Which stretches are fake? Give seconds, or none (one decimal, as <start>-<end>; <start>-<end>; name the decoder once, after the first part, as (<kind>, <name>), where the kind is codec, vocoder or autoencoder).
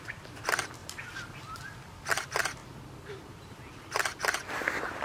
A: 0.0-4.2 (vocoder, BigVGAN v2)